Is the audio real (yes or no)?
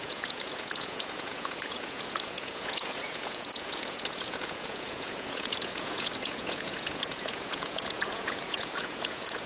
no